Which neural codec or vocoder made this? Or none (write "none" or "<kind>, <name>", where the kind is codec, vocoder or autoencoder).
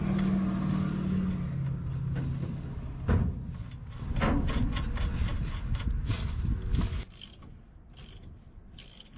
none